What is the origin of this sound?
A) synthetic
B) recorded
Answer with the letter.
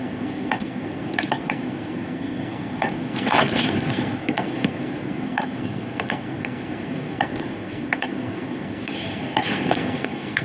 A